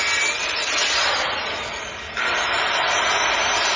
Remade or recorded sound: recorded